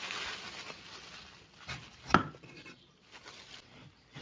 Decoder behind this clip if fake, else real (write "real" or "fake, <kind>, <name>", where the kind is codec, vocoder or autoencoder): real